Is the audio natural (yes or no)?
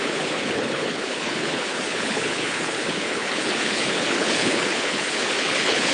no